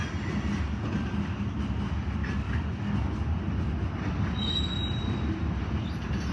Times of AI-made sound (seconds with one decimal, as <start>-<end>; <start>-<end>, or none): none